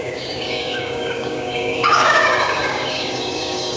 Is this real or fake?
fake